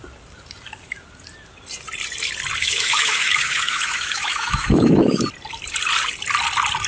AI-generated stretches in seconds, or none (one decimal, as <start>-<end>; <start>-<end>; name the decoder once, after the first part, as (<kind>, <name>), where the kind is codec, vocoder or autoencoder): 2.6-5.2 (autoencoder, DAC-VAE)